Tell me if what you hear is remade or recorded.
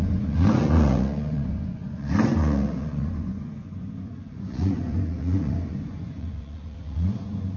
remade